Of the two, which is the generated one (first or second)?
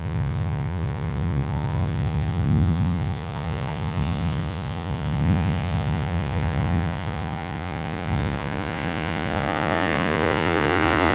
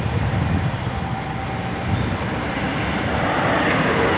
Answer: first